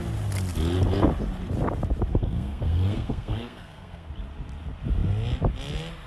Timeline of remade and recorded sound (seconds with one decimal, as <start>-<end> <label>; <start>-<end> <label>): 0.0-2.1 recorded; 2.1-4.1 remade; 4.1-6.1 recorded